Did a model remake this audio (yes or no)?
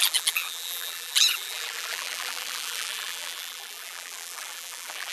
yes